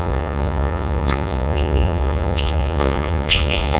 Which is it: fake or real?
fake